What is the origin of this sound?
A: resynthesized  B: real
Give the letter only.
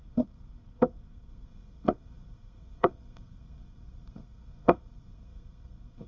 A